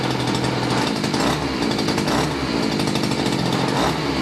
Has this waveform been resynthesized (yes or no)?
no